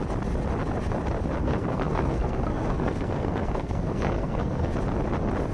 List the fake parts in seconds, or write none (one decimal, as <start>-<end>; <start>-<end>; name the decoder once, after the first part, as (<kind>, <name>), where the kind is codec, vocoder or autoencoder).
1.4-4.7 (codec, SNAC)